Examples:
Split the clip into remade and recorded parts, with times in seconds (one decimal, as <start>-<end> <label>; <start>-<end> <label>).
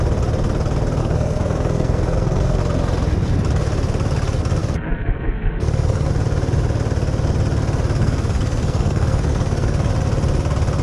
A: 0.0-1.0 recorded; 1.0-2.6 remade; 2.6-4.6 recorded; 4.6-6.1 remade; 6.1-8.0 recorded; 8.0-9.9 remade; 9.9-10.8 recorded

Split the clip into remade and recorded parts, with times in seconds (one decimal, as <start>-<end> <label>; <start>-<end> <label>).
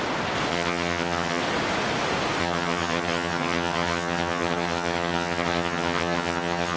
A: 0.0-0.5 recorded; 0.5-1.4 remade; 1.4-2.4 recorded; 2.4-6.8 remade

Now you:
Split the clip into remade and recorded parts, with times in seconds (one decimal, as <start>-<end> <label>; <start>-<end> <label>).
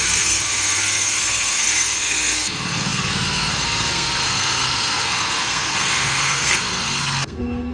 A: 0.0-7.7 remade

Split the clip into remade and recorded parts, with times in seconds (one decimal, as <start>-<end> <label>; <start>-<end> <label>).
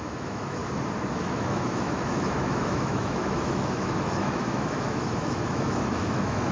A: 0.0-0.6 remade; 0.6-1.1 recorded; 1.1-6.5 remade